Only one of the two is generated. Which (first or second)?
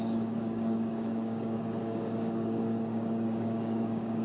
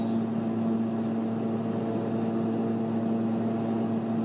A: first